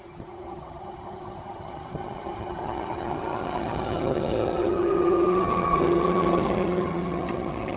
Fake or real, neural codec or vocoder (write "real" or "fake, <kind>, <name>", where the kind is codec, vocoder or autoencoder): fake, vocoder, HiFi-GAN